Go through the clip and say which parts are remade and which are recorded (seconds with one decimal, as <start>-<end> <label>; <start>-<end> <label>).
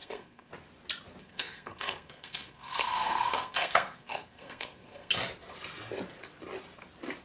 0.0-0.5 remade; 0.5-1.2 recorded; 1.2-5.1 remade; 5.1-7.2 recorded